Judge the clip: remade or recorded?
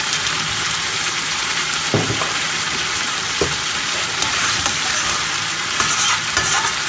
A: remade